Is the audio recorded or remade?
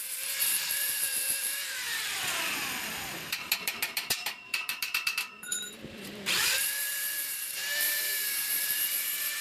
remade